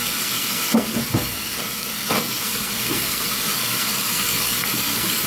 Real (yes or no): no